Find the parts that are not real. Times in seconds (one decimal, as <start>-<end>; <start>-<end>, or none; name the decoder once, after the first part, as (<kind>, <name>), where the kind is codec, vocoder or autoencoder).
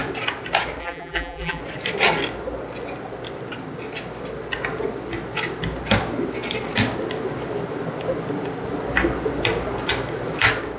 0.8-1.6 (vocoder, BigVGAN v2)